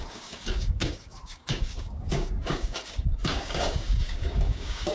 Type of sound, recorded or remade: remade